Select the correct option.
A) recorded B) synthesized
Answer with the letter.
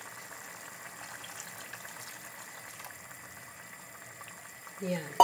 A